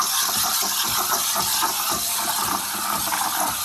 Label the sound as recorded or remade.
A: recorded